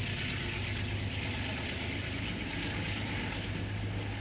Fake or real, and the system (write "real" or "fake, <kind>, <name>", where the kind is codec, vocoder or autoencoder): real